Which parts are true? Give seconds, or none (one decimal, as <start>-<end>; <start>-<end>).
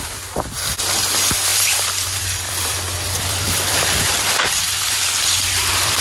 0.0-1.5; 5.1-6.0